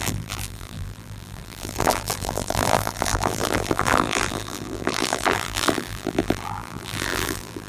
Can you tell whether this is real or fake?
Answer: fake